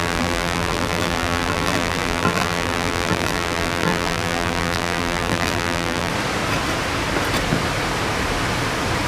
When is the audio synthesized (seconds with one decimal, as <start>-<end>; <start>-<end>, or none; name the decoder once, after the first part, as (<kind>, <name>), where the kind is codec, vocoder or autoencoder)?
0.0-6.1 (vocoder, BigVGAN v2)